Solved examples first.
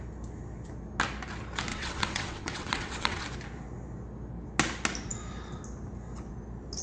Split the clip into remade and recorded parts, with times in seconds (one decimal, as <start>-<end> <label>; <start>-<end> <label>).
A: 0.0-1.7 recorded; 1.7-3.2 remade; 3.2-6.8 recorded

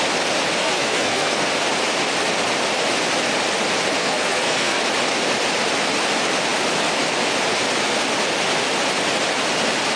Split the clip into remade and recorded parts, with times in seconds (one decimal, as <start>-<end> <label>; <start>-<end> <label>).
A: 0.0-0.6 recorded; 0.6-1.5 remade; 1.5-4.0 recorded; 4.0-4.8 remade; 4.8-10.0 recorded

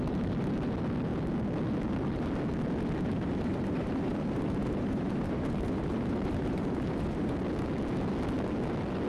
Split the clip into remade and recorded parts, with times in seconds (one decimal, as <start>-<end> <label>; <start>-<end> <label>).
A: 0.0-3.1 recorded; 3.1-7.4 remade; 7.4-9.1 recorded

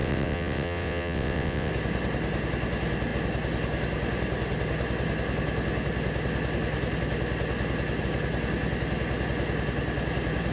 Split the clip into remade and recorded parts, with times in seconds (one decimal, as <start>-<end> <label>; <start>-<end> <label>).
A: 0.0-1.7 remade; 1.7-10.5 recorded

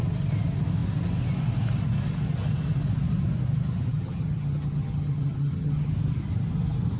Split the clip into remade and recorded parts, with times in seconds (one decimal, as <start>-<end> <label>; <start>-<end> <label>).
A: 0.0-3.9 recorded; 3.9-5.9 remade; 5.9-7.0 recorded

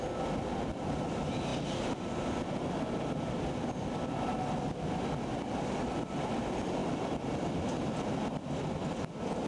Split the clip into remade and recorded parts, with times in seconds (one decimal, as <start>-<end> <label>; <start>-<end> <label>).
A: 0.0-9.5 recorded